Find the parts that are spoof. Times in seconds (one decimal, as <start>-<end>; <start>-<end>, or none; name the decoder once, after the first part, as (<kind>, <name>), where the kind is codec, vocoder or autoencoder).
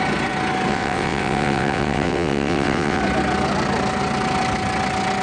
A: 0.7-3.0 (vocoder, WaveNeXt)